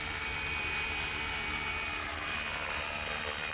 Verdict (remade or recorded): recorded